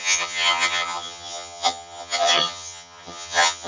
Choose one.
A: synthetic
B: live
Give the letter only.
A